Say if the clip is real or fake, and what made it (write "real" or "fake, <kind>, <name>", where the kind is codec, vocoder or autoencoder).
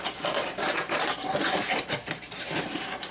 real